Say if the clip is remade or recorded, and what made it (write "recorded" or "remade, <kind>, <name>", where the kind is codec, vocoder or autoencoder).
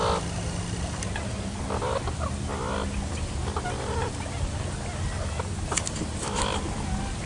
recorded